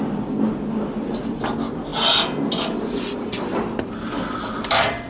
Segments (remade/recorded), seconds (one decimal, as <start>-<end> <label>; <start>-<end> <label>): 0.0-5.1 recorded